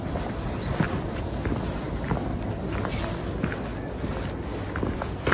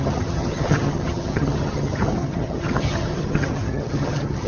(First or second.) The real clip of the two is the first